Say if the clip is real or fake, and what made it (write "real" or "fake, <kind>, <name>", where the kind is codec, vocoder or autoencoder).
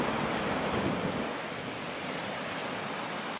real